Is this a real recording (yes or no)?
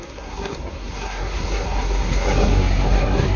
no